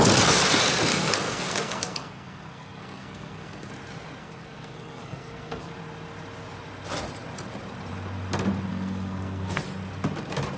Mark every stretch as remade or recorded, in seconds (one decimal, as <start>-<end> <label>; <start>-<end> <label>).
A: 0.0-0.9 recorded; 0.9-3.7 remade; 3.7-4.2 recorded; 4.2-5.7 remade; 5.7-8.7 recorded; 8.7-9.6 remade; 9.6-10.6 recorded